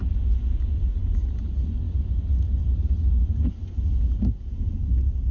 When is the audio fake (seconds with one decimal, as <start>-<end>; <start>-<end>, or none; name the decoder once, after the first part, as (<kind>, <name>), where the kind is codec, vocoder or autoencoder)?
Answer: none